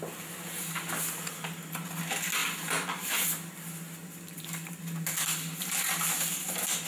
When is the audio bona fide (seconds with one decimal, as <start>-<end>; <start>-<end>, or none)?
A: 0.0-6.9